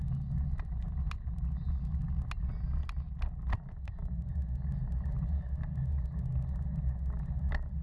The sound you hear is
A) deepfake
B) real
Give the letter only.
B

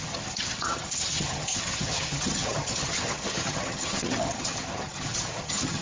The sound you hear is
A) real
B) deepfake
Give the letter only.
B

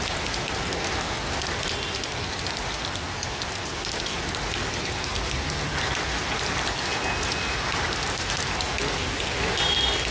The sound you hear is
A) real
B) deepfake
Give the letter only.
B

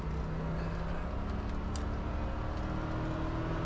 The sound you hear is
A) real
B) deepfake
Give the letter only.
A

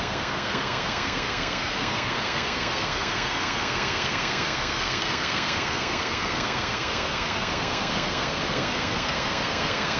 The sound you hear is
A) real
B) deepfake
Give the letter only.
B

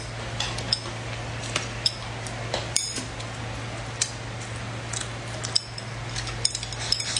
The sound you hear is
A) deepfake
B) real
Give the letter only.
B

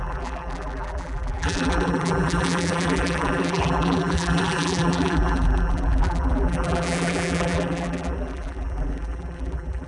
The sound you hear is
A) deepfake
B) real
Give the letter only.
A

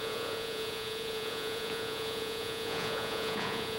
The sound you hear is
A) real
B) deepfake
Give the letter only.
B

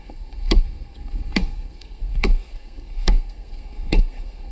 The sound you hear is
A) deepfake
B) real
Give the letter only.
A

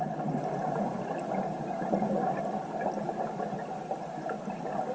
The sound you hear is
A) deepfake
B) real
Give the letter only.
B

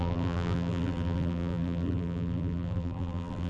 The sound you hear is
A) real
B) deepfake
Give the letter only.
B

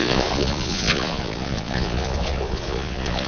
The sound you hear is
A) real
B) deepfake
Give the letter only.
B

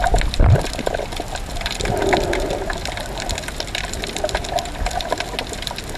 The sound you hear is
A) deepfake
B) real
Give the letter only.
B